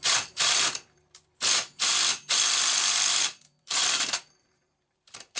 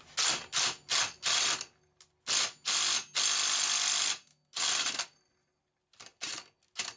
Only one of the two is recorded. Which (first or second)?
second